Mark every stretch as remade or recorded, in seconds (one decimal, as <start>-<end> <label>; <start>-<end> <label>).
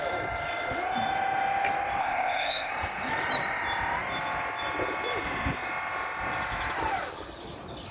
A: 0.0-2.0 recorded; 2.0-2.7 remade; 2.7-7.9 recorded